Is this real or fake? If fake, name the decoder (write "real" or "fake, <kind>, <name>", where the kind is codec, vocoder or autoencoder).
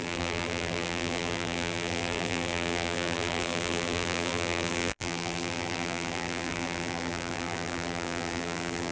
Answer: fake, vocoder, BigVGAN v2